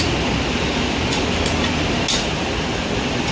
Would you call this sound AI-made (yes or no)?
no